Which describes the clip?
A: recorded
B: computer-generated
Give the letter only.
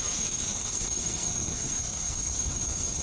B